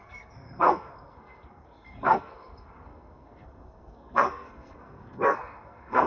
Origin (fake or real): fake